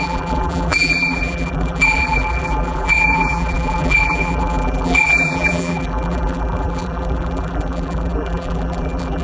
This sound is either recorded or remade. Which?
remade